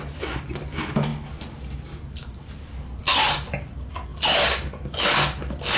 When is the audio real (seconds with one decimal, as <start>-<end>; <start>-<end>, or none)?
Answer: 0.0-5.8